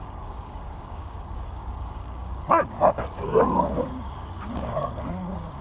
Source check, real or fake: fake